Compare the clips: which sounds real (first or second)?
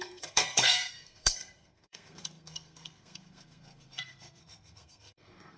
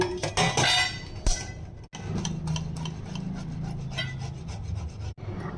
second